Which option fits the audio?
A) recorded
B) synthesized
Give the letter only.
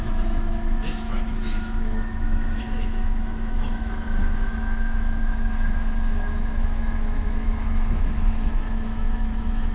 B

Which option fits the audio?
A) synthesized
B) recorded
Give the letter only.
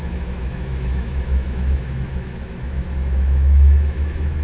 A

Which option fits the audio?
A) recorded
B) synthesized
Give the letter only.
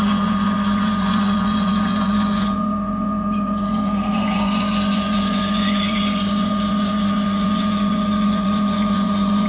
B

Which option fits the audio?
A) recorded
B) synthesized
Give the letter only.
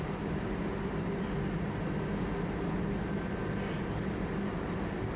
A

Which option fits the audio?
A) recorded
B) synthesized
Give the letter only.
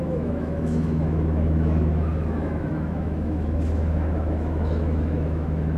B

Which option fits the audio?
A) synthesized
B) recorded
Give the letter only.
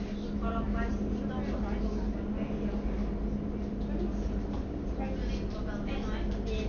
B